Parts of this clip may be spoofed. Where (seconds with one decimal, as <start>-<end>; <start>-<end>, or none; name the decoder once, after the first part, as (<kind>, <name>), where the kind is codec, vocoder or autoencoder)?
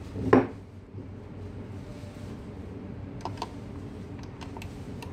none